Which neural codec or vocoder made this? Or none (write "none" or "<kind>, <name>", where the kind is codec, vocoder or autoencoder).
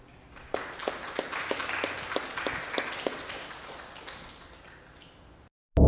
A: none